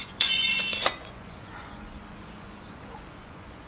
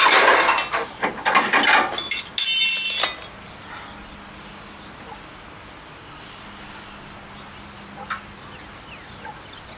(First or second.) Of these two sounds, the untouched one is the second